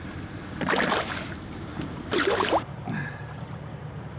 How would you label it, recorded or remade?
remade